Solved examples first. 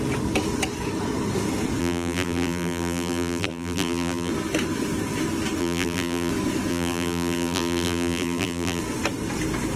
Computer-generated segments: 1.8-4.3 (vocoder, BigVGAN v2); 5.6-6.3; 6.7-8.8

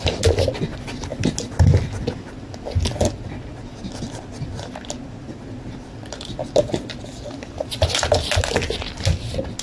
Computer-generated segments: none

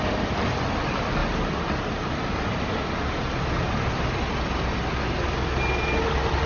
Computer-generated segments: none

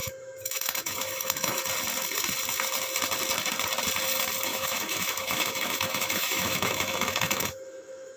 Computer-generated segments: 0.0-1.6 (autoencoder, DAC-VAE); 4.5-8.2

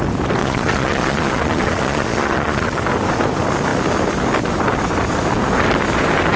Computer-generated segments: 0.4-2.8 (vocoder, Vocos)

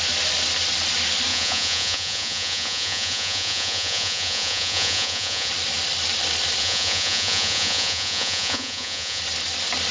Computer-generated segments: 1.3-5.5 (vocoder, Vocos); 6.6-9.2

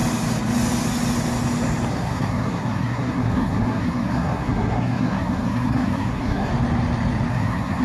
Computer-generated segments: 1.9-6.5 (codec, SNAC); 7.3-7.8